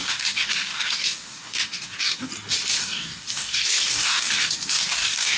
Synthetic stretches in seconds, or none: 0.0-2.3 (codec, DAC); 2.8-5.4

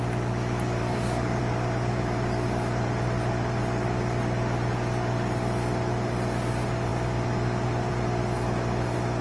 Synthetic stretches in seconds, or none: 0.8-1.4 (codec, DAC)

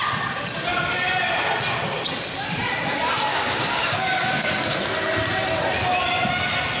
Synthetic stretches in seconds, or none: 3.3-4.5 (codec, DAC)

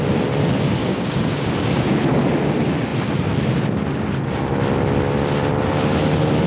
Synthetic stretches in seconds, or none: 0.8-2.0 (codec, DAC)

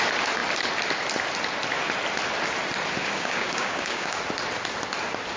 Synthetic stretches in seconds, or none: 3.0-4.2 (codec, DAC)

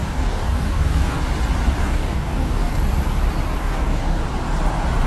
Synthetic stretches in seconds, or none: 0.0-1.2 (codec, DAC); 1.8-2.7; 3.6-4.2

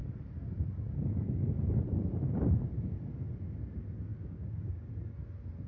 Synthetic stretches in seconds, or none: 4.1-4.9 (codec, DAC)